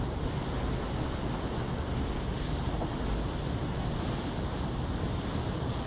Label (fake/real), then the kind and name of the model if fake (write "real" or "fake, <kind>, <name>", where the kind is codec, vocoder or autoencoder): real